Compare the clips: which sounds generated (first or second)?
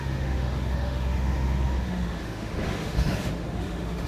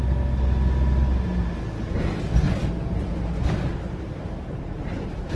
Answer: first